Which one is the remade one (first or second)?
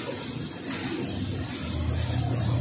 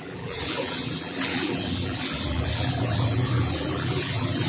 second